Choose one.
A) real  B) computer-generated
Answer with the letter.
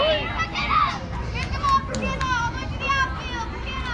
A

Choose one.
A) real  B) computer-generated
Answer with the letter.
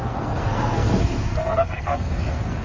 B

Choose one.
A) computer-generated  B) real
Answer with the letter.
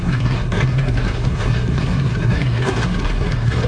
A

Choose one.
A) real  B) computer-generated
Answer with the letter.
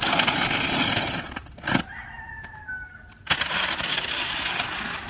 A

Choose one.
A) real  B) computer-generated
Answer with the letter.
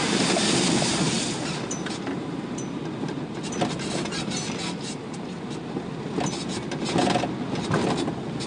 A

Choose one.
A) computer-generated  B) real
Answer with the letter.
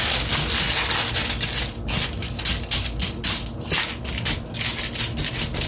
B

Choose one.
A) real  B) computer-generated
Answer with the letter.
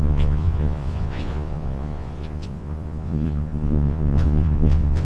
B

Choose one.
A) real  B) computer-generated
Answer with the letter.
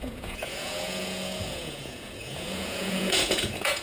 B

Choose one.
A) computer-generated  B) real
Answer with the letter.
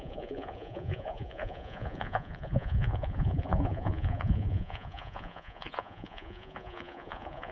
A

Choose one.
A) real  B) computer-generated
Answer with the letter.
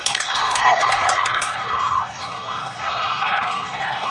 B